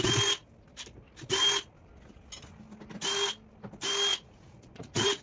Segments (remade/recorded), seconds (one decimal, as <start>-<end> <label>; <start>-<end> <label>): 0.0-4.1 recorded; 4.1-5.2 remade